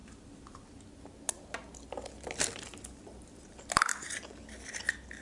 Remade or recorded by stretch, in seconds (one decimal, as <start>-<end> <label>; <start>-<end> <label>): 0.0-0.8 remade; 0.8-5.2 recorded